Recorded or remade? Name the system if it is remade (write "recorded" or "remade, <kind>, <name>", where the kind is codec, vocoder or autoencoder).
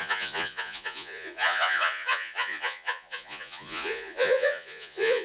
remade, vocoder, Vocos